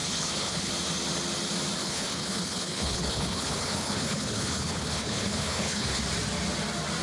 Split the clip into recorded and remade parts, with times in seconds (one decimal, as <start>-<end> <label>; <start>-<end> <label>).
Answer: 0.0-0.7 remade; 0.7-1.8 recorded; 1.8-6.0 remade; 6.0-7.0 recorded